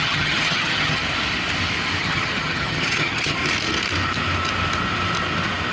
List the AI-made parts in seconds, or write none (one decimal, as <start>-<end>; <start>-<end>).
0.0-1.0; 2.0-3.4